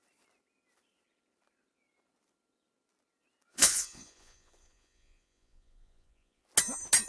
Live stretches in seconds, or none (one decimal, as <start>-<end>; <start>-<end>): 0.0-3.5; 6.4-7.1